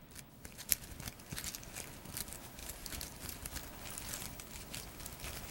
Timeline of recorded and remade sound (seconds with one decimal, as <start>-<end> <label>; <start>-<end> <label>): 0.0-2.6 recorded; 2.6-3.5 remade; 3.5-5.5 recorded